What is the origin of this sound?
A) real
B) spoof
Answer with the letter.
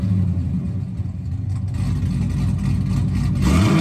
A